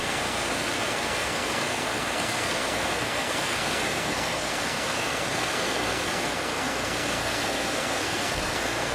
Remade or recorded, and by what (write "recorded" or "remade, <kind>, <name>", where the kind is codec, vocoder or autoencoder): remade, codec, SNAC